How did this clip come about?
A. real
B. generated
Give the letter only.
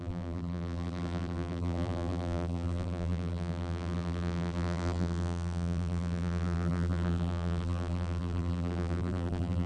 B